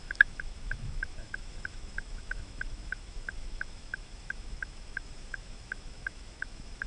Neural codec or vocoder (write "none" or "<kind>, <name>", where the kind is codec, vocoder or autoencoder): autoencoder, DAC-VAE